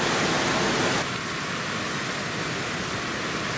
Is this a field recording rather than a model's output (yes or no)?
yes